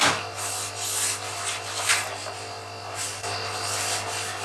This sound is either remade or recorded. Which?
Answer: recorded